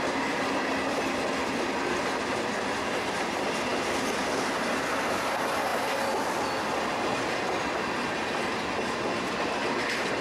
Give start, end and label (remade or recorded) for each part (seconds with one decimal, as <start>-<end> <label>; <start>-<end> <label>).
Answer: 0.0-10.2 recorded